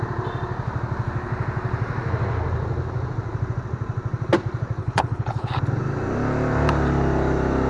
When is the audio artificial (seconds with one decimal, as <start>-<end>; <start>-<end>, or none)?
4.8-5.5